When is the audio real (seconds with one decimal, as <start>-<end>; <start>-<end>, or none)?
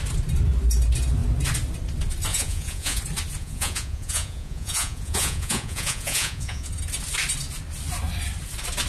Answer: 0.0-2.3; 3.0-3.4; 6.7-8.9